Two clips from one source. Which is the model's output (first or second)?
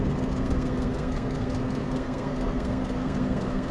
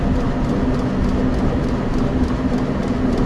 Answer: first